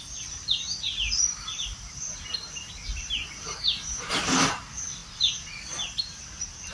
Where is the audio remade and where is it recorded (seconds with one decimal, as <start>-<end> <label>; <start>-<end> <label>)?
0.0-1.2 recorded; 1.2-4.1 remade; 4.1-6.7 recorded